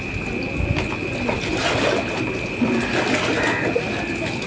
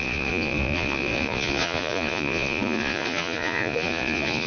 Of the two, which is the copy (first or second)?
second